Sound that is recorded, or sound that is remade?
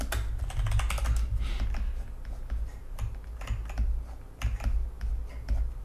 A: recorded